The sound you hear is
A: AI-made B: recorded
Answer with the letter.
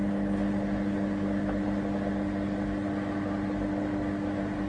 B